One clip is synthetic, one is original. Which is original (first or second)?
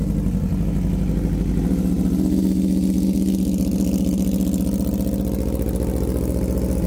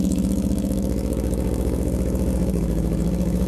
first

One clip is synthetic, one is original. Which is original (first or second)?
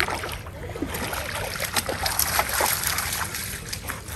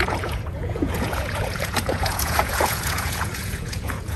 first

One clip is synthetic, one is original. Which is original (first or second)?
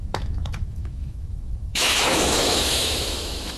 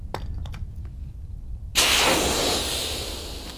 second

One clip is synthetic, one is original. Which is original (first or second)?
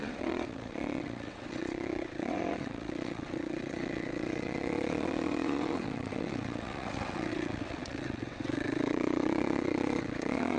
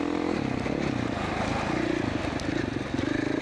second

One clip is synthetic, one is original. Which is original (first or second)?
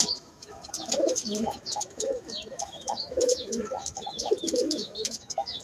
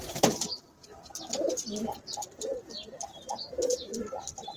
second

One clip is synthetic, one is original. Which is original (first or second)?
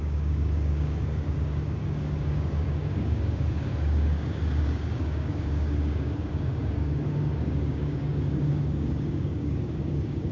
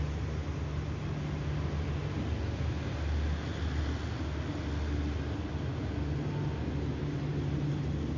second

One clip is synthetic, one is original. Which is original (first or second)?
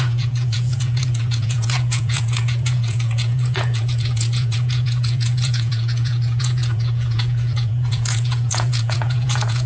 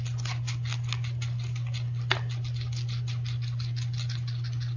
second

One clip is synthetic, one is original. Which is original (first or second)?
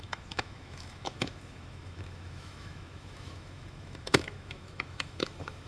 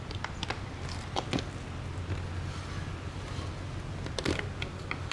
second